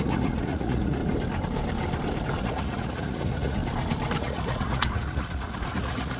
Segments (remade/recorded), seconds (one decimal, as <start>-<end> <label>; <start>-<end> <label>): 0.0-1.0 remade; 1.0-2.4 recorded; 2.4-3.6 remade; 3.6-4.2 recorded; 4.2-6.2 remade

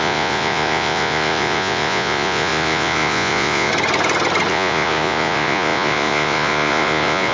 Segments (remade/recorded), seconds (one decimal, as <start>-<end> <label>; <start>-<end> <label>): 0.0-3.7 remade; 3.7-4.5 recorded; 4.5-7.3 remade

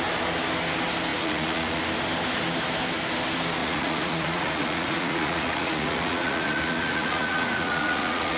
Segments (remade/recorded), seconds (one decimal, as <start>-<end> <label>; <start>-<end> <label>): 0.0-1.1 recorded; 1.1-1.8 remade; 1.8-3.6 recorded; 3.6-8.4 remade

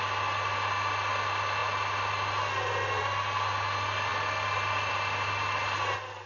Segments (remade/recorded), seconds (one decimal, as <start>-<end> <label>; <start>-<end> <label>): 0.0-6.3 recorded

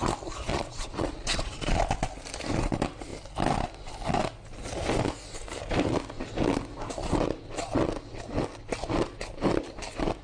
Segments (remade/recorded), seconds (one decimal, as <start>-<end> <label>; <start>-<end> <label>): 0.0-0.5 recorded; 0.5-1.8 remade; 1.8-10.2 recorded

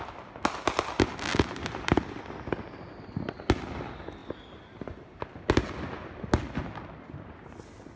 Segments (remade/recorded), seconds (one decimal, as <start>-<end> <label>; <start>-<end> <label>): 0.0-8.0 recorded

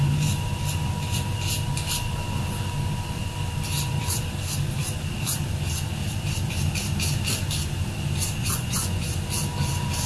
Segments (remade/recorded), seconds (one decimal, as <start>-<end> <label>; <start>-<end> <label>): 0.0-8.4 recorded; 8.4-9.1 remade; 9.1-10.1 recorded